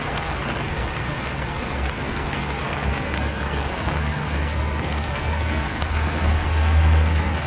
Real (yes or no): no